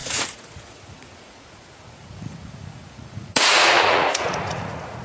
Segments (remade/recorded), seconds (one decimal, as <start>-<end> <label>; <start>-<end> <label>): 0.0-5.0 remade